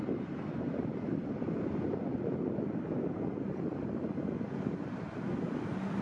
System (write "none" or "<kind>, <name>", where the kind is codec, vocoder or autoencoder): none